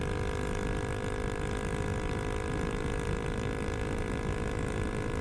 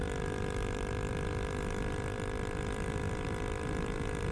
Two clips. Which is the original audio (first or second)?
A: first